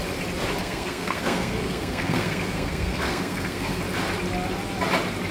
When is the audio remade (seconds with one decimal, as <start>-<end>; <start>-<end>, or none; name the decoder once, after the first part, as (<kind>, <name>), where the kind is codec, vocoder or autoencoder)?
0.6-3.8 (codec, SNAC)